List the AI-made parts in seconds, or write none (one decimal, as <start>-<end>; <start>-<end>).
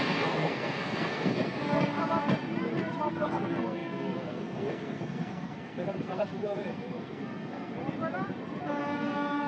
0.0-2.0; 3.1-7.8; 8.8-9.5